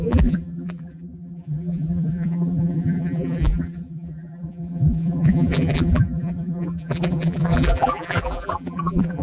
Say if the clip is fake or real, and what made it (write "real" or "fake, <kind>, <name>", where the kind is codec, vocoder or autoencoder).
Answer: fake, vocoder, BigVGAN v2